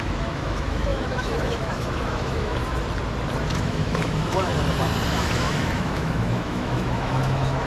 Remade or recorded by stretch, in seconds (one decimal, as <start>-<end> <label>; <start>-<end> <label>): 0.0-2.6 remade; 2.6-3.5 recorded; 3.5-4.5 remade; 4.5-5.1 recorded; 5.1-7.7 remade